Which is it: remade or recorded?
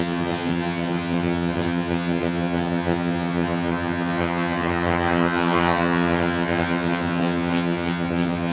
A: remade